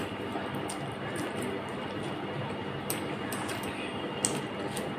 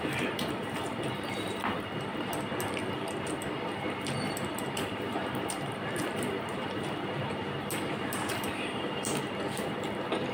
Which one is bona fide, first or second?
first